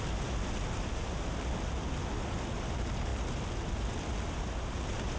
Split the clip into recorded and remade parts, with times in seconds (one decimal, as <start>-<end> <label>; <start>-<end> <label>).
0.0-5.2 recorded